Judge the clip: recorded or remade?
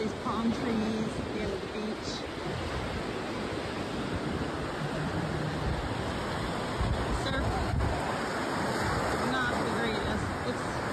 recorded